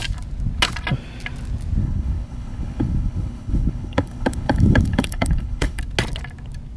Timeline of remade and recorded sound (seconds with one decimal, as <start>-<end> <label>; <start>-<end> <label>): 0.0-1.8 recorded; 1.8-5.8 remade; 5.8-6.8 recorded